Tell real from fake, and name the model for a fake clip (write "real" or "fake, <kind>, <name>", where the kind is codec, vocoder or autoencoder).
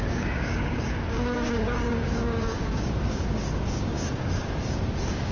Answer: fake, codec, DAC